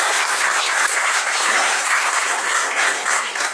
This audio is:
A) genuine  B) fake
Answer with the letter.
B